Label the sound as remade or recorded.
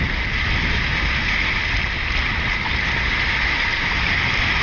recorded